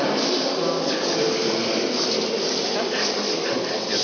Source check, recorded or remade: recorded